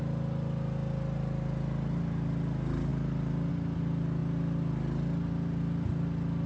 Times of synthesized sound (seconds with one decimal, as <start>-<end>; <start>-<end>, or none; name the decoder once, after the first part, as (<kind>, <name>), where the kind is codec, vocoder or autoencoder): none